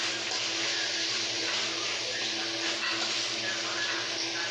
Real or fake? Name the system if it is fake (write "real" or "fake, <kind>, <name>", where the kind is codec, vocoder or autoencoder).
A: real